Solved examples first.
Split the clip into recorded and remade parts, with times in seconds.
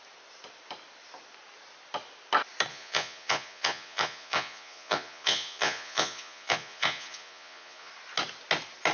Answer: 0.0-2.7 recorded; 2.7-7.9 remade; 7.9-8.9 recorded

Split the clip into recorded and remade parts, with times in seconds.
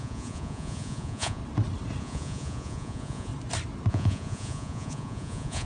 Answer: 0.0-1.4 remade; 1.4-2.0 recorded; 2.0-3.3 remade; 3.3-3.9 recorded; 3.9-5.7 remade